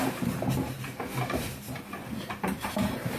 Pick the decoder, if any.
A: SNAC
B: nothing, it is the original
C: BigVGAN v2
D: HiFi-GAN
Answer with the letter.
C